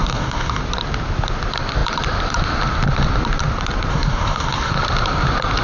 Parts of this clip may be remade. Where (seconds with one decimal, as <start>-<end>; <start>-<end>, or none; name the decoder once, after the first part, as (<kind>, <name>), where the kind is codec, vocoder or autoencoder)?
0.0-0.6 (codec, DAC); 3.9-4.7